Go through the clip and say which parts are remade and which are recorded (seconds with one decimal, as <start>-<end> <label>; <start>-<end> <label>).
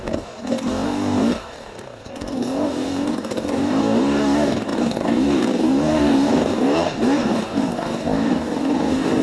0.0-9.2 remade